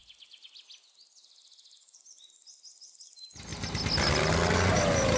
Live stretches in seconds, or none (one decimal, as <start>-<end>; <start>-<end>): 0.0-5.2